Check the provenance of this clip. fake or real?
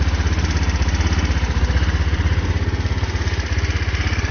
real